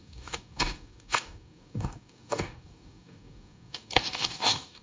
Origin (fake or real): fake